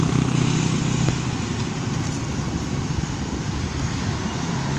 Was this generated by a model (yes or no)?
no